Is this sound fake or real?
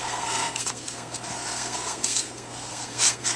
fake